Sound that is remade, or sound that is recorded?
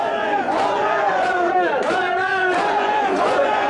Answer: remade